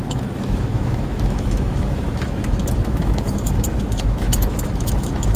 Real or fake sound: fake